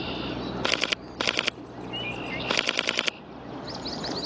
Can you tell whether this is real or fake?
real